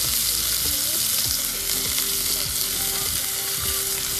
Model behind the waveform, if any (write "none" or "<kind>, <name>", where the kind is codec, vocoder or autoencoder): none